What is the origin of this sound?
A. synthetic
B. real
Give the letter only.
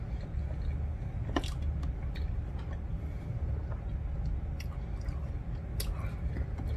B